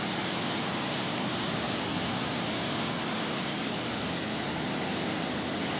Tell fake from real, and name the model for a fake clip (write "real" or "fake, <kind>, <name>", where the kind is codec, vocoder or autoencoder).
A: real